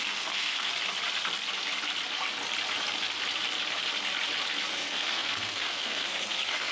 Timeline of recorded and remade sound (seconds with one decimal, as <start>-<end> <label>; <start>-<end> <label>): 0.0-0.7 remade; 0.7-4.7 recorded; 4.7-6.7 remade

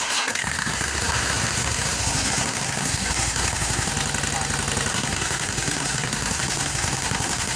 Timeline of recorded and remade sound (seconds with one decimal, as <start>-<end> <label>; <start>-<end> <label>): 0.0-3.9 remade; 3.9-4.9 recorded; 4.9-7.6 remade

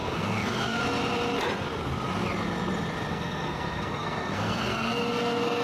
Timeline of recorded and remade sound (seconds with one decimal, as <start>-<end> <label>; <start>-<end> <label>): 0.0-0.8 remade; 0.8-3.1 recorded; 3.1-5.6 remade

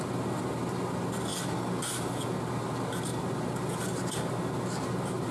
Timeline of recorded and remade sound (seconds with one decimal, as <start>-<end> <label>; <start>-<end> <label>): 0.0-5.3 recorded

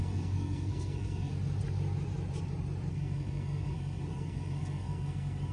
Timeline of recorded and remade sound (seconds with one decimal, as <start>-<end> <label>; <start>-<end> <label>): 0.0-1.3 remade; 1.3-2.9 recorded; 2.9-5.5 remade

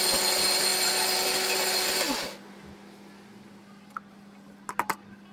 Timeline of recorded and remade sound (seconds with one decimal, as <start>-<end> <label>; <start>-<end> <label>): 0.0-5.3 recorded

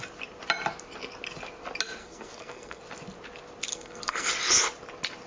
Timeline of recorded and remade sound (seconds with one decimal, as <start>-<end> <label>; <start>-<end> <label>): 0.0-2.0 recorded; 2.0-2.8 remade; 2.8-3.7 recorded; 3.7-4.3 remade; 4.3-5.3 recorded

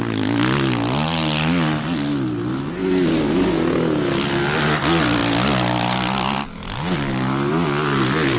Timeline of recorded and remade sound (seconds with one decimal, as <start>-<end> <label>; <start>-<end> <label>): 0.0-8.4 recorded